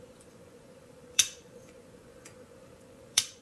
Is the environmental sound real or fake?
fake